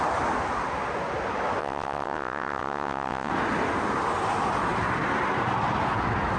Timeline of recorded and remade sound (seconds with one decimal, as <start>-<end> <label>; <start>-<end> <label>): 0.0-1.6 recorded; 1.6-3.3 remade; 3.3-6.4 recorded